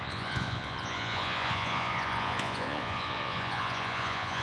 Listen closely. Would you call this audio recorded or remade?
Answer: remade